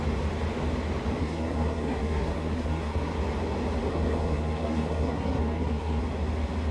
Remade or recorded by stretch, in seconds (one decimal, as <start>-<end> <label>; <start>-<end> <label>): 0.0-1.2 recorded; 1.2-3.1 remade; 3.1-3.9 recorded; 3.9-6.0 remade; 6.0-6.7 recorded

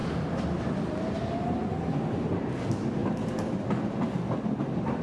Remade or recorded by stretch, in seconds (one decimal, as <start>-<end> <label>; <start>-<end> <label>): 0.0-5.0 recorded

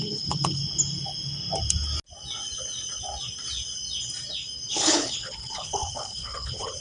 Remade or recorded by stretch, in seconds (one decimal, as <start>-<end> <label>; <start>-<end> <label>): 0.0-0.6 remade; 0.6-4.7 recorded; 4.7-6.8 remade

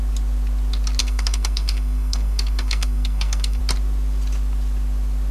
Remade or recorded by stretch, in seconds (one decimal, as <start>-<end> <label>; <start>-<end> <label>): 0.0-1.0 recorded; 1.0-3.6 remade; 3.6-5.3 recorded